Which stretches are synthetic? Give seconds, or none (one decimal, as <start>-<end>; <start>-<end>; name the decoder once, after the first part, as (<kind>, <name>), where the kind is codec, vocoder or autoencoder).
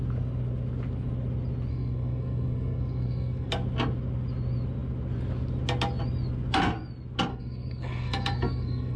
1.7-3.5 (codec, SNAC); 7.3-9.0